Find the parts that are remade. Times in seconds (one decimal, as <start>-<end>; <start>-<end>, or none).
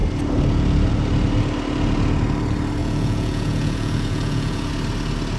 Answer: 2.8-4.7